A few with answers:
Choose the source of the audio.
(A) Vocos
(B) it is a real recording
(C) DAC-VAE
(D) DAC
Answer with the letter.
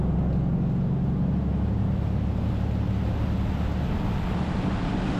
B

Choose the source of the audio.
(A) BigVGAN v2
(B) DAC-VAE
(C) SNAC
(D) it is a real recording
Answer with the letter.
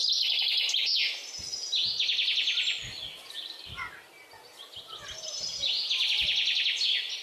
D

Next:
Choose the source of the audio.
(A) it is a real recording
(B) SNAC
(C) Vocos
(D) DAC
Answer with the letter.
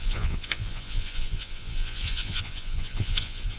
C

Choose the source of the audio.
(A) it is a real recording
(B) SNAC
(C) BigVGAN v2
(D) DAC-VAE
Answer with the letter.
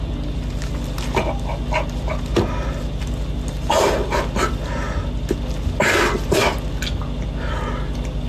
A